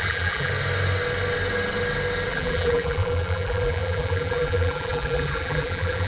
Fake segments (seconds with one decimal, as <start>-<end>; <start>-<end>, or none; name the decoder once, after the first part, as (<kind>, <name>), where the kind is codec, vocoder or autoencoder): 0.0-0.5 (vocoder, BigVGAN v2); 2.3-6.1